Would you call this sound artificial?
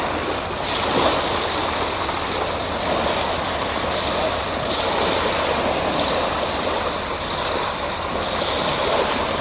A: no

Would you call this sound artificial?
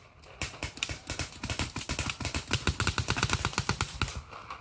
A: no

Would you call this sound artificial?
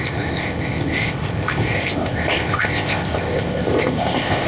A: yes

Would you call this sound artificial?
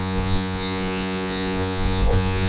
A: yes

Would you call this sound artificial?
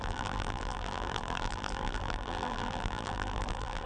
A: yes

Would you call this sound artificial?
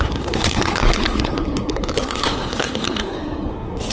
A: yes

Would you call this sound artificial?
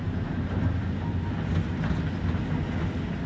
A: no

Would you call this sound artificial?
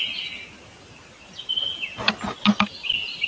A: no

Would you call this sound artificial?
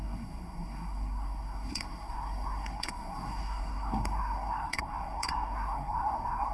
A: yes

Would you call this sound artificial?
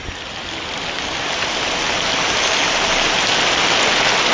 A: no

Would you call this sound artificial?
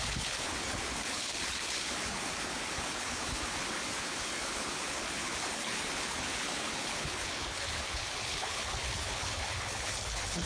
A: yes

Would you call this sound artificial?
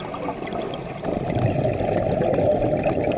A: no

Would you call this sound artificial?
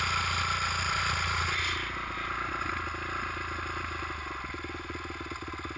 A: no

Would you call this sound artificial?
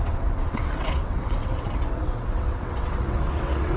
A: yes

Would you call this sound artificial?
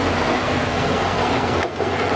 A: yes